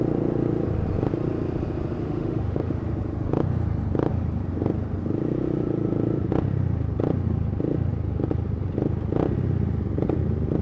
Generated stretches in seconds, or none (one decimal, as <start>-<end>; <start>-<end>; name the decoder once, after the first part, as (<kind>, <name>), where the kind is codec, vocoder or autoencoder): 2.0-2.8 (autoencoder, DAC-VAE)